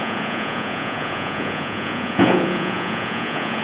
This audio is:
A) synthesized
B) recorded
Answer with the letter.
A